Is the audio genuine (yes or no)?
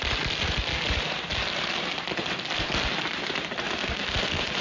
yes